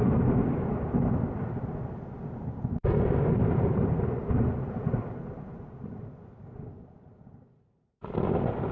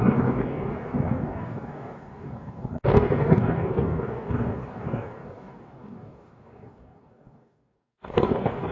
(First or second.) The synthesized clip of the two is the second